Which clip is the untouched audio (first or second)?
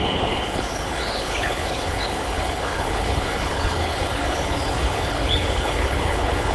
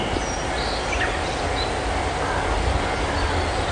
second